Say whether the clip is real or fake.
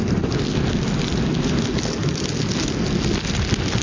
real